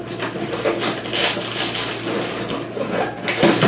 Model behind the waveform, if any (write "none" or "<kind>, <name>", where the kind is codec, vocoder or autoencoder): none